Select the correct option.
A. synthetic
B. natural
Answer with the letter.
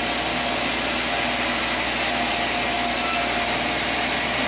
B